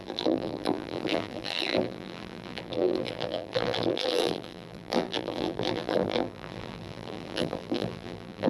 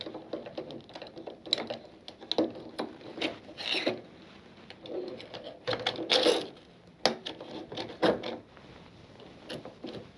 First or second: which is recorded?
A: second